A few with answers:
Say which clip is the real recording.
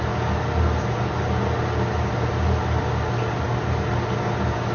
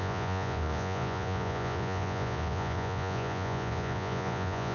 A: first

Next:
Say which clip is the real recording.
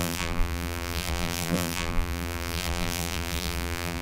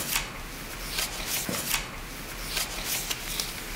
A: second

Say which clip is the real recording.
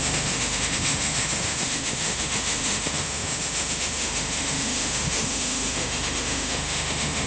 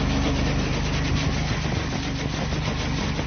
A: second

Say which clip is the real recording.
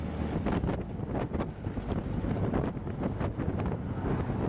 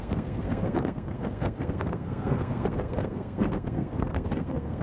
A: first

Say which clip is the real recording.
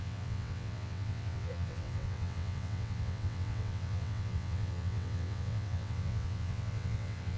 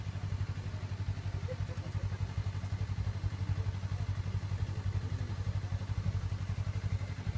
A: second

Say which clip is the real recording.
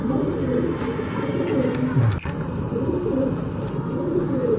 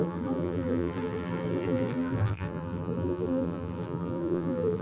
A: first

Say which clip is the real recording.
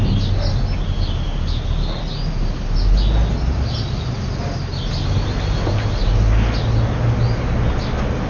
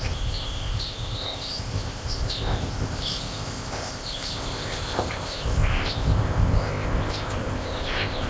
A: first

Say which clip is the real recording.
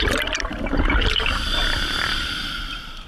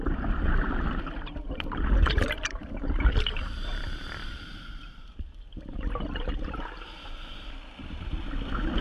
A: first